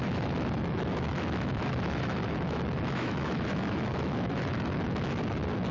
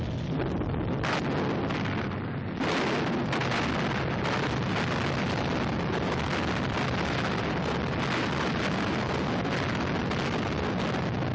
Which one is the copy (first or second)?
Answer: first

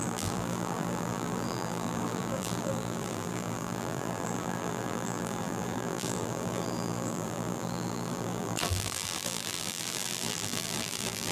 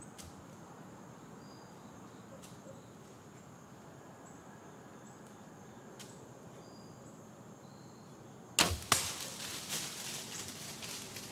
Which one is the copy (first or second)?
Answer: first